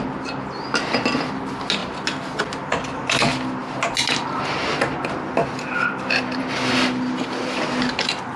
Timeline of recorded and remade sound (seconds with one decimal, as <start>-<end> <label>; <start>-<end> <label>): 0.0-8.4 recorded